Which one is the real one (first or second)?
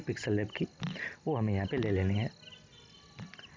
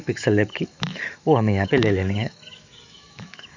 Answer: first